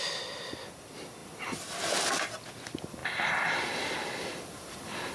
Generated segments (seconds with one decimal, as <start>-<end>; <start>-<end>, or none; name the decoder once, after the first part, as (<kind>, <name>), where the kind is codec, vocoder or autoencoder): none

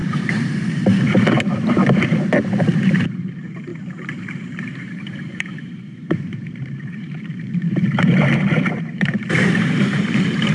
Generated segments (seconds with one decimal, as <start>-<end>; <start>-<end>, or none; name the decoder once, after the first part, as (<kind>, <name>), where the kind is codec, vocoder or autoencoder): 0.0-10.5 (vocoder, BigVGAN v2)

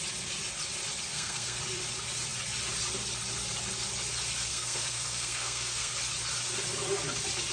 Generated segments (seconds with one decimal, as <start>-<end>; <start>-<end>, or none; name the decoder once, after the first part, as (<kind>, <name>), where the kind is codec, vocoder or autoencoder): 1.1-1.6 (codec, SNAC); 4.5-5.9